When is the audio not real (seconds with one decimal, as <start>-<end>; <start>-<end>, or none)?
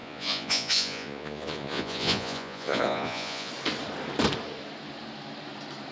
0.0-3.5